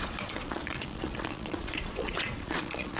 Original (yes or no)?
no